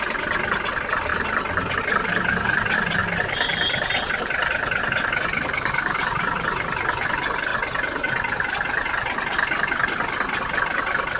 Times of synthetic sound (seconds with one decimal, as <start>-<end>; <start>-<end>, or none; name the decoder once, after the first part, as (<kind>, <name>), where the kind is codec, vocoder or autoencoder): none